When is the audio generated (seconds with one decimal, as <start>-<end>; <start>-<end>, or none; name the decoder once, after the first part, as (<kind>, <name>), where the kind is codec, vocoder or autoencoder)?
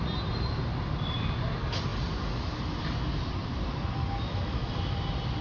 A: none